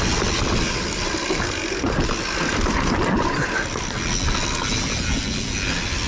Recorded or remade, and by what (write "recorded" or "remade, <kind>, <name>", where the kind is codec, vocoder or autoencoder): recorded